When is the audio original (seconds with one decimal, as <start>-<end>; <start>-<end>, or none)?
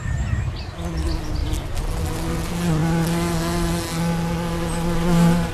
0.0-5.5